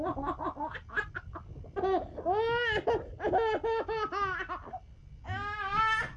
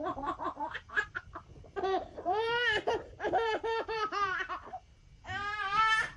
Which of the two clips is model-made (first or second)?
second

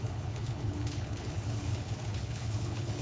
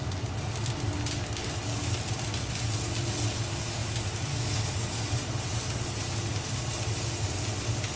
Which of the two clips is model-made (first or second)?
first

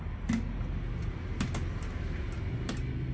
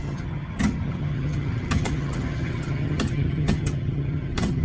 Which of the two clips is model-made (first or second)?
second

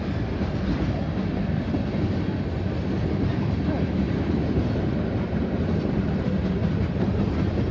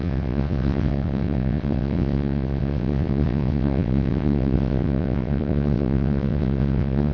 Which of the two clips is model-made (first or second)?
second